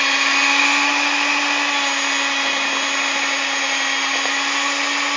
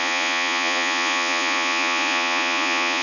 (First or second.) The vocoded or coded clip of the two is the second